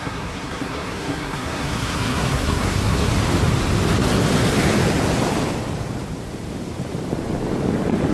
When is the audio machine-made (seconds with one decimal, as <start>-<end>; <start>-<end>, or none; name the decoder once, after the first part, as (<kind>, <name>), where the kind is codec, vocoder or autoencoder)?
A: 0.0-3.1 (codec, SNAC)